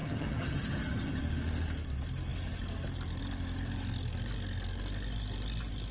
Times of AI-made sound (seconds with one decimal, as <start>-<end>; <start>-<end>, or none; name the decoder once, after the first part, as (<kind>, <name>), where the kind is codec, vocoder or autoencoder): 0.0-1.2 (vocoder, HiFi-GAN)